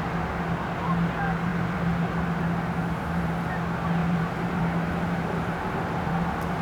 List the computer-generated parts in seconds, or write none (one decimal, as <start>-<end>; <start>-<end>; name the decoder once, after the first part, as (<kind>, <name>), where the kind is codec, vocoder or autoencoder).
4.0-4.6 (vocoder, BigVGAN v2)